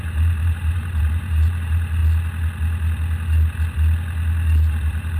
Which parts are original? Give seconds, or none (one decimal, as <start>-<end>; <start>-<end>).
2.0-5.2